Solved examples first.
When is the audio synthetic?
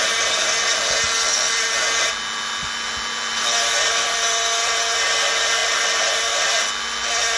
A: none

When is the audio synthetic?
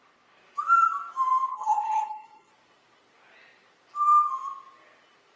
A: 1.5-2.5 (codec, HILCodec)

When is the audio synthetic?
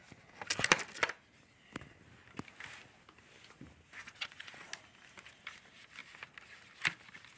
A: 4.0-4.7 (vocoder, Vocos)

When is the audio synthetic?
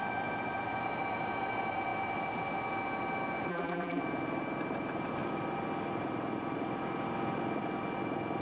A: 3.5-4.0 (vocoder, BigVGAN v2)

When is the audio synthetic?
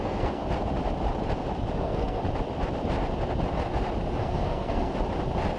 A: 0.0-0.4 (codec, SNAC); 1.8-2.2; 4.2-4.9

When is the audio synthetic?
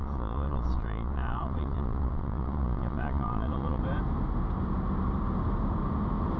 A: 0.0-3.8 (vocoder, Vocos)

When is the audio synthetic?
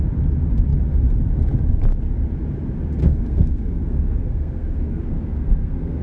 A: 3.0-6.0 (codec, SNAC)